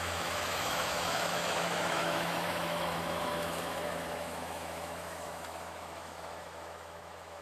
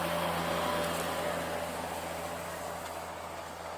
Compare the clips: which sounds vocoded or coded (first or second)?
first